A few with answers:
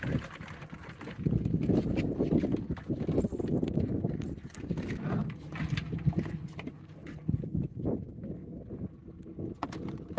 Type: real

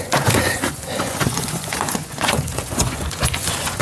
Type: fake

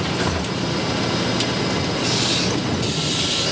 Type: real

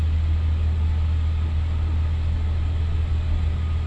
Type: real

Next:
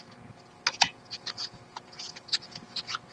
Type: fake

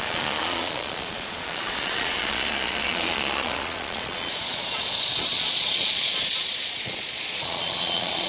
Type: fake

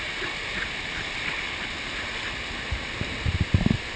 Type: real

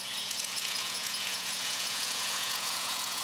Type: fake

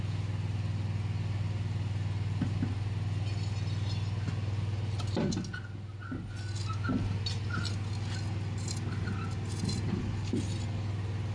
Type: real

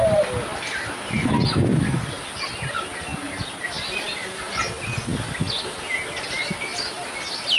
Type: real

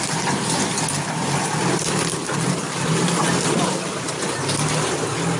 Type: real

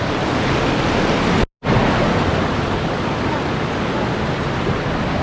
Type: real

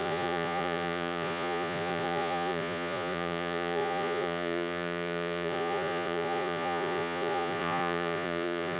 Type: fake